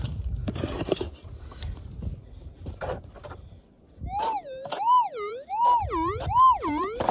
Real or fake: fake